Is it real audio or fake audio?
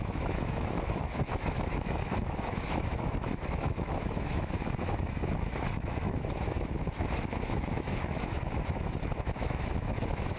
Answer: fake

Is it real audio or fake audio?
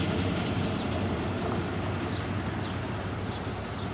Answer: real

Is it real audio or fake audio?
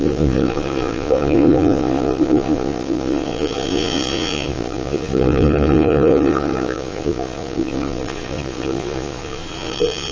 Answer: fake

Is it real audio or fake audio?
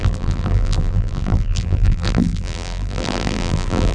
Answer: fake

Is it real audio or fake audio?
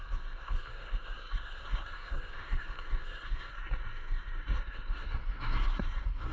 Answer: fake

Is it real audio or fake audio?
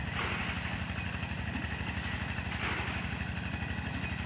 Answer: real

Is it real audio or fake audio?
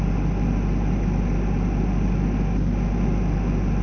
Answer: real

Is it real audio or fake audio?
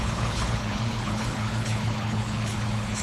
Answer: fake